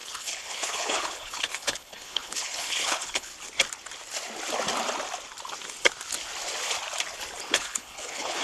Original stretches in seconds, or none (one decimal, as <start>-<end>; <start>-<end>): 3.3-7.4